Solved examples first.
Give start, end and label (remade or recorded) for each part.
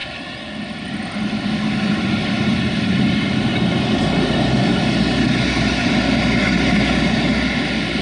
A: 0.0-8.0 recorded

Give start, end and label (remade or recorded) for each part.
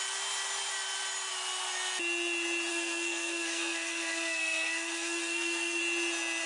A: 0.0-2.7 recorded; 2.7-5.8 remade; 5.8-6.5 recorded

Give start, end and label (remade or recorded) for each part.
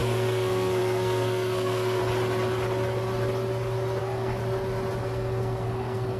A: 0.0-2.0 remade; 2.0-4.0 recorded; 4.0-4.4 remade; 4.4-5.0 recorded; 5.0-6.2 remade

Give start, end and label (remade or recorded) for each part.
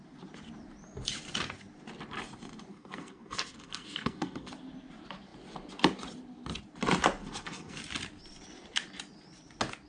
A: 0.0-2.7 recorded; 2.7-4.5 remade; 4.5-7.2 recorded; 7.2-7.8 remade; 7.8-9.9 recorded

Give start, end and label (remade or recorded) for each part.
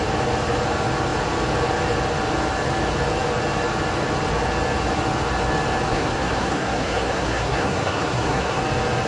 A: 0.0-5.9 recorded; 5.9-8.6 remade; 8.6-9.1 recorded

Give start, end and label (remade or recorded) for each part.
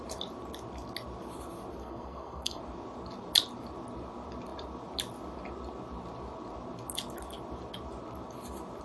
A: 0.0-1.8 recorded; 1.8-2.6 remade; 2.6-8.8 recorded